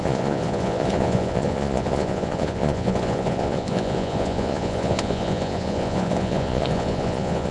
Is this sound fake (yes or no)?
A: yes